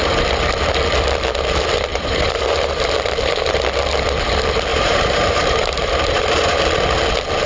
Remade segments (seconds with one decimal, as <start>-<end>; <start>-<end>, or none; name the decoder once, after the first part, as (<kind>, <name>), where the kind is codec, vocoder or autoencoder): 1.9-2.8 (vocoder, BigVGAN v2); 4.7-6.6